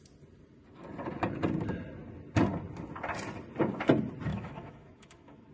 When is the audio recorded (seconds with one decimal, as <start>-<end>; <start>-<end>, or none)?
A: 0.0-4.3